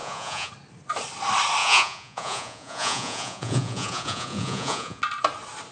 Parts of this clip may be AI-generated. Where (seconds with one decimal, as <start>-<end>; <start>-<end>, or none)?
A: 0.0-0.5; 1.6-5.0